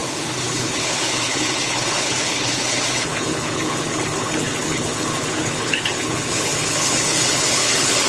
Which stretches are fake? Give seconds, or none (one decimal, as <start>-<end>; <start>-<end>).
0.0-8.1